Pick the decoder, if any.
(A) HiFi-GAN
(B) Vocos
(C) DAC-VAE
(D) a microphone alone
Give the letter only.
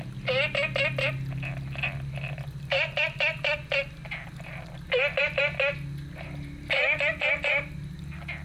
D